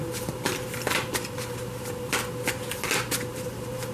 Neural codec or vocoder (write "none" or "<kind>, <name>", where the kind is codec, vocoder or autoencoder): none